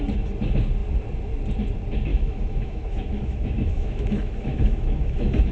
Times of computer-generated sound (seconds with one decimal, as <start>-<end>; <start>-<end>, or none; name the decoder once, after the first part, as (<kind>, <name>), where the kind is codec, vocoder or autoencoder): 2.1-5.5 (autoencoder, DAC-VAE)